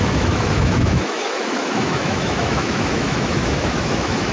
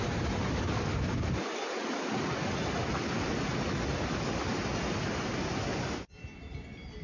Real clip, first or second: second